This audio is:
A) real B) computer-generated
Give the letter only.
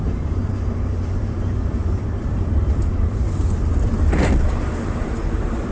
B